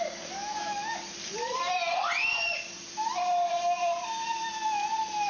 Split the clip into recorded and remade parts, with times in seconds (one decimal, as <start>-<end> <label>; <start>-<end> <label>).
0.0-0.4 recorded; 0.4-1.0 remade; 1.0-5.3 recorded